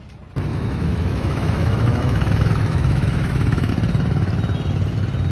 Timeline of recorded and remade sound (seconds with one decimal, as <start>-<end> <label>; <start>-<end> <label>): 0.0-0.5 recorded; 0.5-3.7 remade; 3.7-5.3 recorded